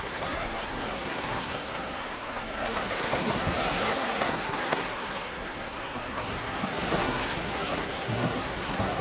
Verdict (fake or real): fake